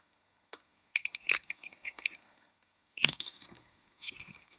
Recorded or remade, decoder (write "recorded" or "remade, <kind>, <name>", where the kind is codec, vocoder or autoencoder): remade, codec, SNAC